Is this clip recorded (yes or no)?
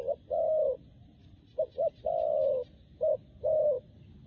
yes